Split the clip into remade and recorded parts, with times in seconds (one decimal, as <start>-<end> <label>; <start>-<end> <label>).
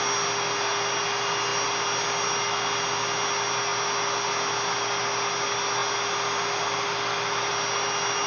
0.0-8.3 recorded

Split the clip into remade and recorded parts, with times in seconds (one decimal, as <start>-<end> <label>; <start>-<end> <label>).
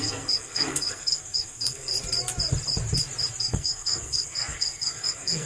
0.0-1.9 remade; 1.9-3.4 recorded; 3.4-5.5 remade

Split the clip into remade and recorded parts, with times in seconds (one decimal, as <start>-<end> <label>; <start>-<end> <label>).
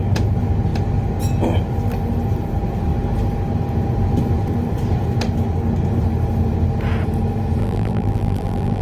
0.0-7.6 recorded; 7.6-8.8 remade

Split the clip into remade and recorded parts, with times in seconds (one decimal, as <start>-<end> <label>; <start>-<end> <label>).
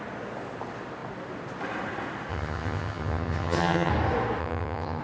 0.0-2.3 recorded; 2.3-3.9 remade; 3.9-4.4 recorded; 4.4-5.0 remade